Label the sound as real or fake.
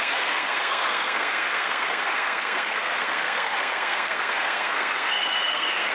fake